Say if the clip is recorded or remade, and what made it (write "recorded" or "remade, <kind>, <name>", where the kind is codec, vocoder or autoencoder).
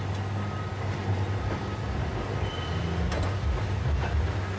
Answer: recorded